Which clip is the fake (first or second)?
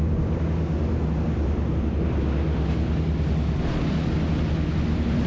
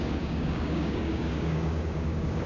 second